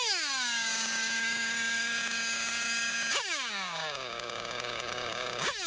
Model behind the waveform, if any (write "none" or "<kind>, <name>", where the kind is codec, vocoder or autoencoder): codec, DAC